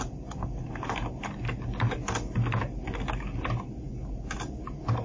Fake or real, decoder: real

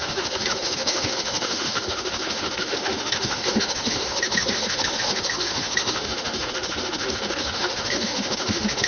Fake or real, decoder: fake, autoencoder, DAC-VAE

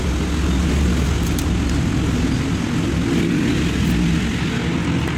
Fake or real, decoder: real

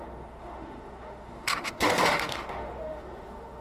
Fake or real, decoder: fake, autoencoder, DAC-VAE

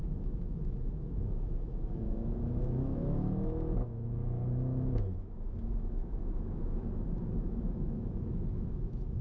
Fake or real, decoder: fake, autoencoder, DAC-VAE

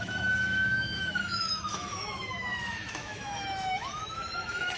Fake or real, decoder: fake, autoencoder, DAC-VAE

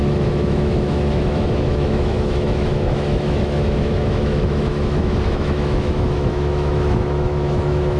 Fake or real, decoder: fake, autoencoder, DAC-VAE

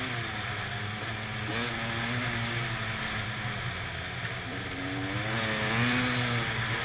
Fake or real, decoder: real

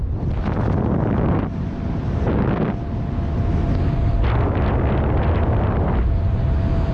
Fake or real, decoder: real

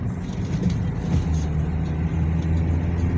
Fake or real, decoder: real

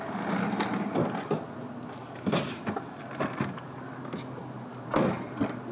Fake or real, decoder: real